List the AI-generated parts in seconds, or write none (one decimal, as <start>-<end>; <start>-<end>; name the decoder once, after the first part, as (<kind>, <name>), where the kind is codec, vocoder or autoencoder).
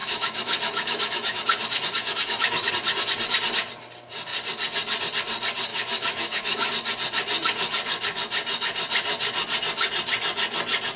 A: 0.0-2.7 (autoencoder, DAC-VAE); 5.7-6.7